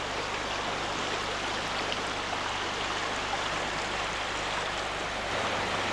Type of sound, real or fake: real